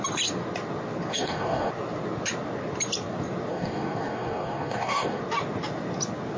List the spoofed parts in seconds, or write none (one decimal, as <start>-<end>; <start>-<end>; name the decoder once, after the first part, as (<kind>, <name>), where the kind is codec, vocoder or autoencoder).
1.1-1.7 (codec, DAC); 3.5-5.2